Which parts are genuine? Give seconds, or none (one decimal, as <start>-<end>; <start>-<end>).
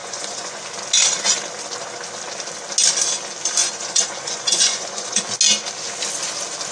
0.7-3.6; 5.2-6.7